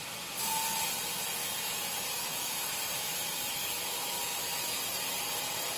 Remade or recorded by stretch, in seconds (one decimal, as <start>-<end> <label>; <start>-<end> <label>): 0.0-1.4 recorded; 1.4-4.8 remade; 4.8-5.8 recorded